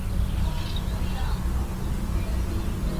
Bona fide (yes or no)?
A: yes